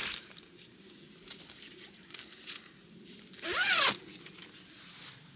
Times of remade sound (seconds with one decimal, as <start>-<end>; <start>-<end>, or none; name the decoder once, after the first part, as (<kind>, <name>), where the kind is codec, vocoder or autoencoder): 0.0-3.2 (vocoder, BigVGAN v2)